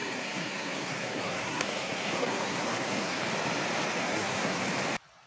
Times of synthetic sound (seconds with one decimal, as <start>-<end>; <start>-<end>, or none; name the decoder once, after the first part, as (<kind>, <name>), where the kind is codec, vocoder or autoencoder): 0.0-3.2 (codec, SNAC); 4.0-4.6